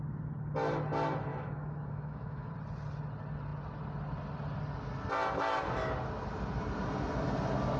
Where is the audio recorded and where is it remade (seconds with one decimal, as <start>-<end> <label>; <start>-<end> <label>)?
0.0-1.3 recorded; 1.3-2.5 remade; 2.5-7.8 recorded